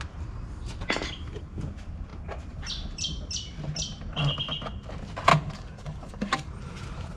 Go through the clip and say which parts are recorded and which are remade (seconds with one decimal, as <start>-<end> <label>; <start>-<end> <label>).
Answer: 0.0-5.3 recorded; 5.3-6.5 remade; 6.5-7.2 recorded